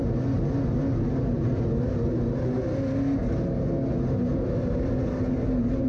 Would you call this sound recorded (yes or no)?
yes